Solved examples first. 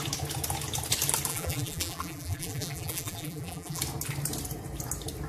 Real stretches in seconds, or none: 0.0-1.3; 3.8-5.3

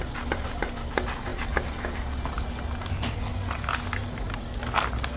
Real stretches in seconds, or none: 0.0-5.2

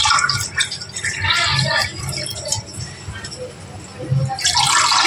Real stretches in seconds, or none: 0.0-2.3; 3.1-5.1

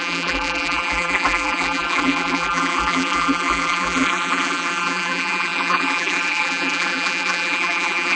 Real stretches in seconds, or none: none

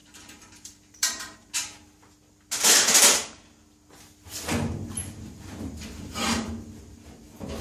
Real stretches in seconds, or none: 1.5-5.0; 6.5-7.6

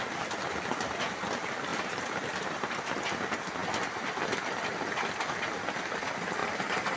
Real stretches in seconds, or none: 0.0-1.7; 2.8-6.4

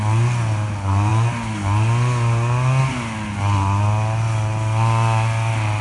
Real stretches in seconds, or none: 0.0-5.8